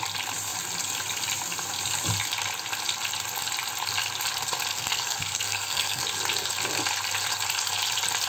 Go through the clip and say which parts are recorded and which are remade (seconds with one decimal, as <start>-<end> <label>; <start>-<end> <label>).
0.0-4.7 recorded; 4.7-6.0 remade; 6.0-8.3 recorded